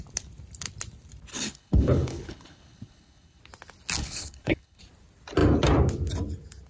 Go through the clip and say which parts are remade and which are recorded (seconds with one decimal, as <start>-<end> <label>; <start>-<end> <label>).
0.0-1.3 recorded; 1.3-3.4 remade; 3.4-4.0 recorded; 4.0-4.8 remade; 4.8-6.7 recorded